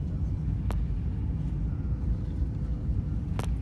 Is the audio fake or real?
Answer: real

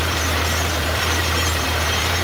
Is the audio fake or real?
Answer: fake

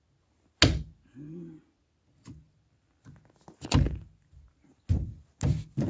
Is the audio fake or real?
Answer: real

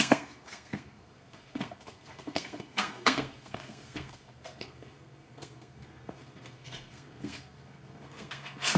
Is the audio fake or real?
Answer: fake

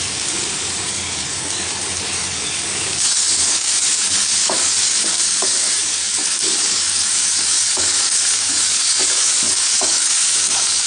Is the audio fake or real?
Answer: fake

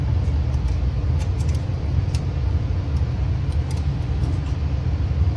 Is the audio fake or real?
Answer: real